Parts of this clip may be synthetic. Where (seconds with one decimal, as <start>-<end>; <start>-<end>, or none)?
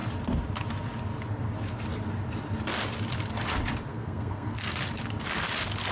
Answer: 3.9-4.7